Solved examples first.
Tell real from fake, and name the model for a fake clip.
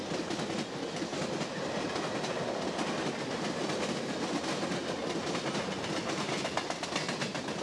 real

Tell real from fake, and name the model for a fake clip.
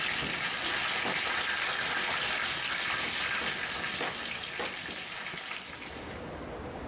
real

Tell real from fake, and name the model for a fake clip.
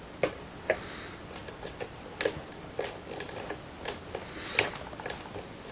real